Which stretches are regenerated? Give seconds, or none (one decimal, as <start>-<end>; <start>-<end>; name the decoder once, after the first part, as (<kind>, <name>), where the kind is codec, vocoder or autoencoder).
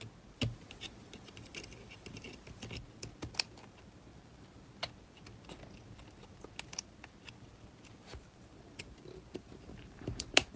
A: 4.1-4.8 (vocoder, BigVGAN v2); 8.0-10.6